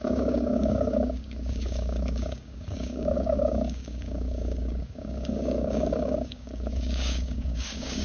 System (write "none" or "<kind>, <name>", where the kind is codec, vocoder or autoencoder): codec, DAC